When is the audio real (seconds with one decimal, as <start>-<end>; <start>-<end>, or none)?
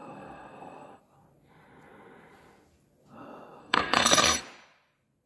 1.0-3.6; 4.4-5.3